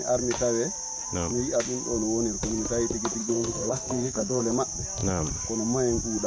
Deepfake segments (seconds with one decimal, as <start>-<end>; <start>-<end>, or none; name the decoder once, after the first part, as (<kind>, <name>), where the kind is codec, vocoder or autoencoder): 3.2-4.4 (codec, SNAC)